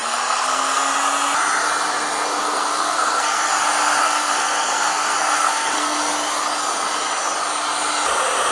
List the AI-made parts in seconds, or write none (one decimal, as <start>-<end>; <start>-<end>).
0.0-0.9; 2.4-3.5; 4.0-6.0

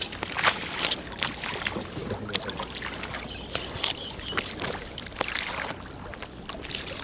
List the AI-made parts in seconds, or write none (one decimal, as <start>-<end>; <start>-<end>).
none